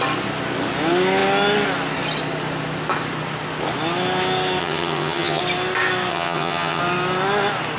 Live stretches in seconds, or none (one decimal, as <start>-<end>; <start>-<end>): 0.0-4.6; 5.4-6.1; 6.8-7.8